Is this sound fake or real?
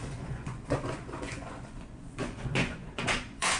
fake